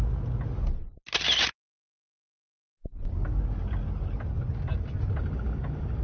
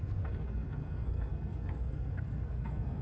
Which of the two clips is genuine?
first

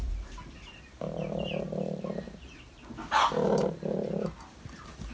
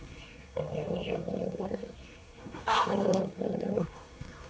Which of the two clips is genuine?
first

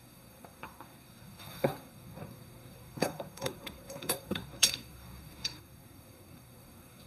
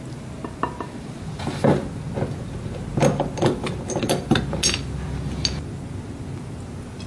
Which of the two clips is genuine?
second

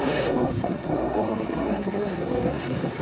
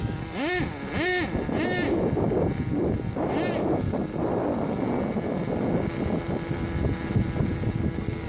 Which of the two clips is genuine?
second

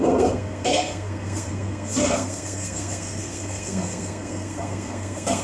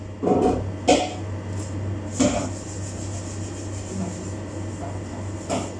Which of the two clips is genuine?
second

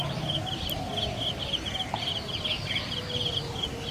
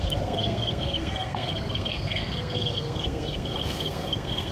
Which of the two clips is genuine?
first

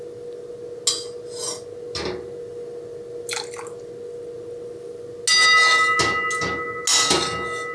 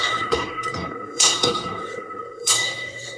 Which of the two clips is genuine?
first